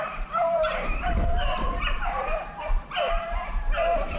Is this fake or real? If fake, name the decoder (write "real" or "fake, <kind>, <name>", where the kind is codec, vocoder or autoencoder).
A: fake, vocoder, BigVGAN v2